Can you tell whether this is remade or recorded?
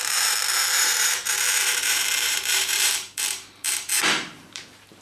remade